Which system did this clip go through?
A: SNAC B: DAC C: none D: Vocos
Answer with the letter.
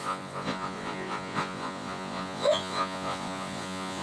D